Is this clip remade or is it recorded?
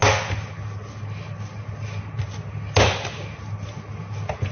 recorded